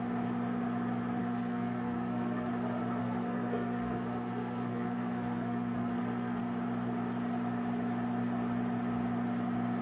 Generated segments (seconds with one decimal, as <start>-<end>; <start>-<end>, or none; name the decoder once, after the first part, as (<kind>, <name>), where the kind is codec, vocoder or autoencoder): 1.2-2.5 (codec, SNAC); 3.0-6.4